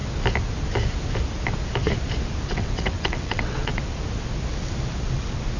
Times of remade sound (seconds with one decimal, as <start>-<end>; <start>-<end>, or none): 2.5-3.8